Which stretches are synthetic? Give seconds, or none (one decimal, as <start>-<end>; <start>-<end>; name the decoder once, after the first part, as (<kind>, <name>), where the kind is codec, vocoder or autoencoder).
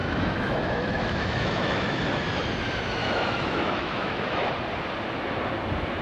0.0-2.0 (autoencoder, DAC-VAE); 3.0-4.5